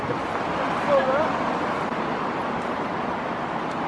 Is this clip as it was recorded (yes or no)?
yes